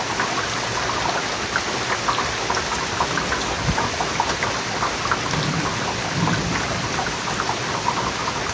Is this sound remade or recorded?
recorded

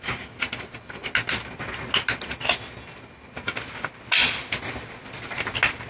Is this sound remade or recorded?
recorded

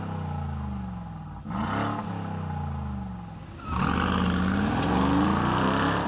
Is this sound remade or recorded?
recorded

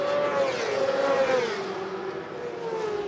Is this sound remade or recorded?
recorded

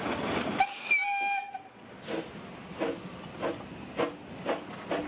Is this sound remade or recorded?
recorded